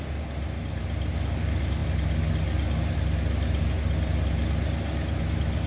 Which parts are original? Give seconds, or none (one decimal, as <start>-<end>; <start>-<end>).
0.0-5.7